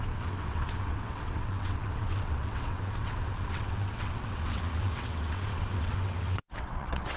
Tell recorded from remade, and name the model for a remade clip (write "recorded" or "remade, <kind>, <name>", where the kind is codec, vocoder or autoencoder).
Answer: remade, vocoder, WaveNeXt